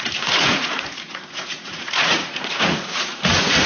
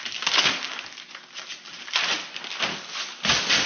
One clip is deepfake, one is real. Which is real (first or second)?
second